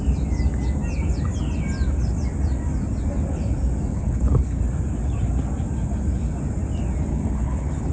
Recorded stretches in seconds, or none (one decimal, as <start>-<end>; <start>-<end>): 0.0-3.9; 4.6-7.1